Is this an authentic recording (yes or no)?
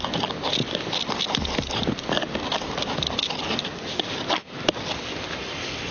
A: yes